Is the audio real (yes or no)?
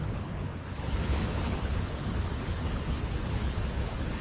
no